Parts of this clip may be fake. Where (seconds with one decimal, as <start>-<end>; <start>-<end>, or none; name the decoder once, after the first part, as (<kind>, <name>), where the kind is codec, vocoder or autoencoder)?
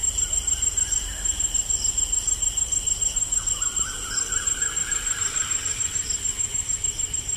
0.0-1.9 (vocoder, BigVGAN v2); 3.2-7.4